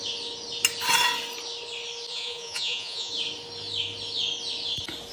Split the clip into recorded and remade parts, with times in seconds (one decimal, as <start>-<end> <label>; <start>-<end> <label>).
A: 0.0-2.1 recorded; 2.1-3.1 remade; 3.1-5.1 recorded